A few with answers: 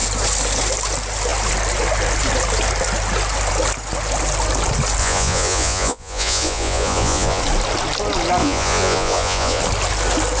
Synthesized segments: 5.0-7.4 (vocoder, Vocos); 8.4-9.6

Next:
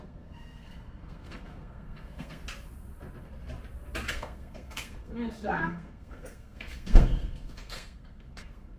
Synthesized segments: 0.0-2.4 (codec, SNAC); 4.1-8.8